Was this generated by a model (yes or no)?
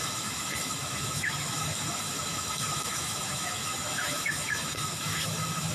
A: yes